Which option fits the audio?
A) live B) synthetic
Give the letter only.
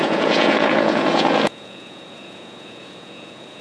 B